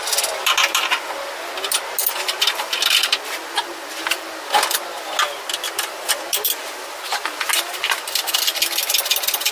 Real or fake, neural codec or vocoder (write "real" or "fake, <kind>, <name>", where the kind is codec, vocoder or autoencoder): real